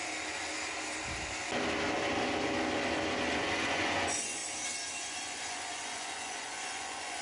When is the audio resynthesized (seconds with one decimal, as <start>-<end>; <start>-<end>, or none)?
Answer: 3.3-4.4; 5.0-7.2